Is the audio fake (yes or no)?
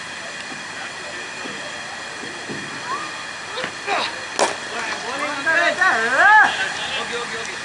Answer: no